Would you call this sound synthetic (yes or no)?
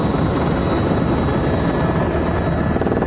no